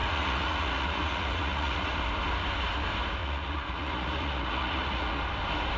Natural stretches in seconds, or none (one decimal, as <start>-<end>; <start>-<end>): 1.9-3.2; 5.2-5.8